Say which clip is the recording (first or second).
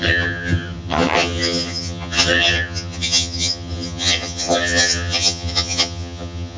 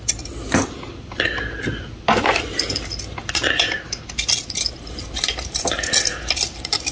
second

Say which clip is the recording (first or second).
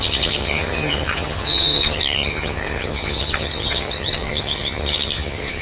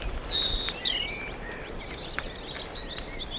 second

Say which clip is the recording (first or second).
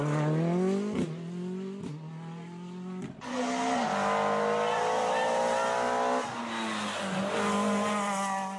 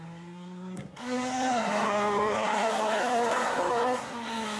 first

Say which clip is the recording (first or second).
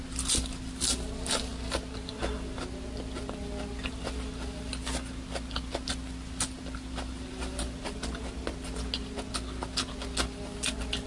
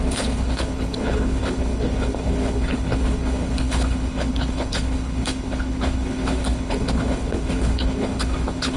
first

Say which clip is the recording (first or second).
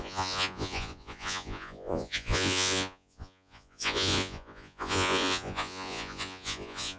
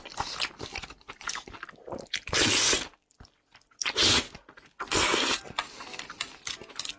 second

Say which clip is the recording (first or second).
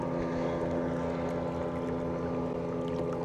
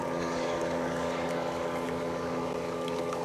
first